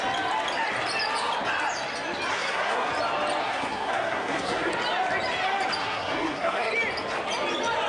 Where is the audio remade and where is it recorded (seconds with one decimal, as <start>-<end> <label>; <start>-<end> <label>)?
0.0-2.3 recorded; 2.3-2.9 remade; 2.9-3.4 recorded; 3.4-4.7 remade; 4.7-5.8 recorded; 5.8-6.7 remade; 6.7-7.9 recorded